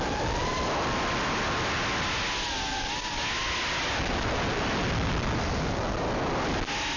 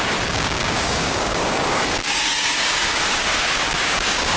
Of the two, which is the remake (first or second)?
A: second